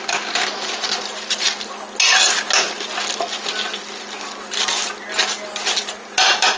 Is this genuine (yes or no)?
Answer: yes